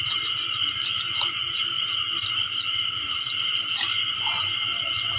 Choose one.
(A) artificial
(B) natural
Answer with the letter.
A